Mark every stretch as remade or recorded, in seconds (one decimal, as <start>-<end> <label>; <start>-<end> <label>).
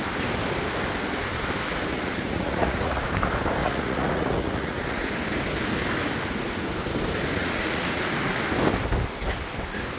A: 0.0-1.9 recorded; 1.9-3.0 remade; 3.0-3.6 recorded; 3.6-5.0 remade; 5.0-7.4 recorded; 7.4-8.0 remade; 8.0-10.0 recorded